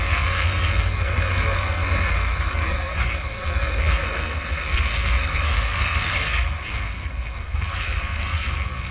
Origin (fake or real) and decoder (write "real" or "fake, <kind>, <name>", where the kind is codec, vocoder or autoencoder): fake, codec, SNAC